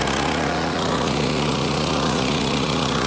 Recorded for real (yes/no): no